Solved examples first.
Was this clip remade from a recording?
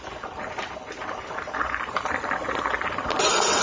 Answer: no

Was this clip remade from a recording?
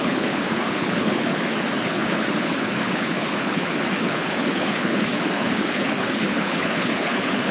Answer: yes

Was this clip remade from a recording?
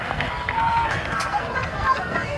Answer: yes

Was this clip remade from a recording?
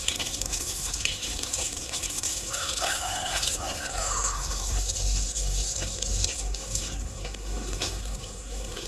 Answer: yes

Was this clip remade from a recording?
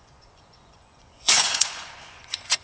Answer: yes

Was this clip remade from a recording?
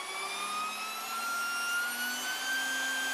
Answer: no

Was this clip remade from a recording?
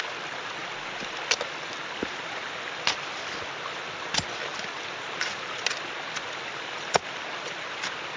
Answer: no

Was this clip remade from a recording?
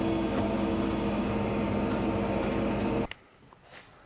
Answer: no